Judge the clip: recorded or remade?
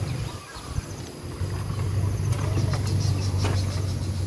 recorded